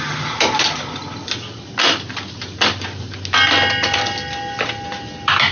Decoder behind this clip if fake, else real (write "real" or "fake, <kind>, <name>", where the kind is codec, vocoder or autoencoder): real